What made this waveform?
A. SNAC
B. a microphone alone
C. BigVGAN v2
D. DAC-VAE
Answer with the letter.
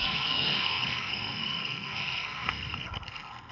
A